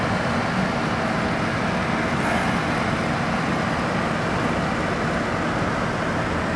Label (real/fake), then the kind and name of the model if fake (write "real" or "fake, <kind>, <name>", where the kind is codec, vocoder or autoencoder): real